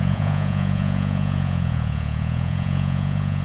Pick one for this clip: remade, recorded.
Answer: remade